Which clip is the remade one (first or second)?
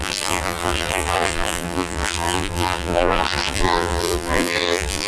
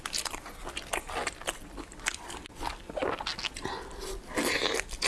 first